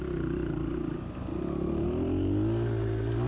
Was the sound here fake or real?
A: real